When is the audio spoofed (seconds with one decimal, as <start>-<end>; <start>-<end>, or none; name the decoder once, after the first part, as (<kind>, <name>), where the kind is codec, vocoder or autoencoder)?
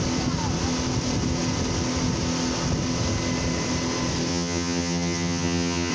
4.3-5.9 (vocoder, HiFi-GAN)